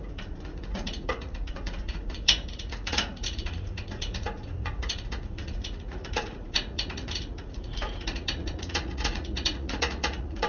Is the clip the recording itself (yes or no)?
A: no